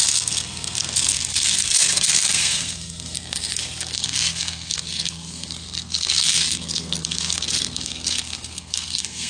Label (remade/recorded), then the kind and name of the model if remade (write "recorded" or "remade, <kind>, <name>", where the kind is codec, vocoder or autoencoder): remade, codec, SNAC